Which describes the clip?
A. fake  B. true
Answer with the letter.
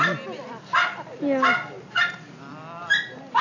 B